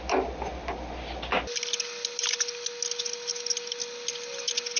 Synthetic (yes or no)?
no